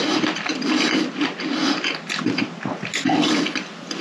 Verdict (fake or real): real